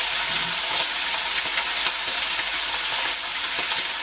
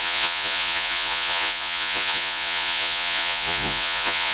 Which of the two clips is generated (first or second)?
second